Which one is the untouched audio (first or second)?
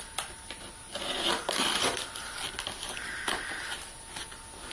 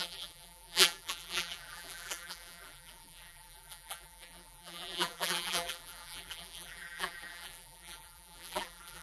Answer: first